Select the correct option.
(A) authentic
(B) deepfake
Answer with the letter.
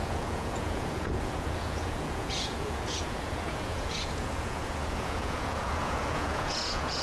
B